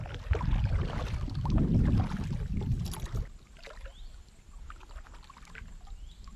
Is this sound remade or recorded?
recorded